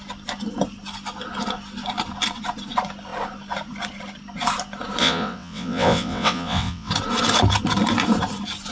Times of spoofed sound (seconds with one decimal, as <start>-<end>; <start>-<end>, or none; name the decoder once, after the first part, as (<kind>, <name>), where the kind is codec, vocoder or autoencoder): 5.0-6.9 (vocoder, WaveNeXt)